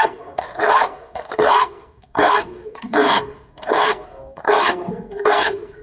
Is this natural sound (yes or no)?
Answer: no